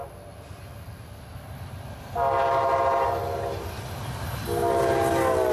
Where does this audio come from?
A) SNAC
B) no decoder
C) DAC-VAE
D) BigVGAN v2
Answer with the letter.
B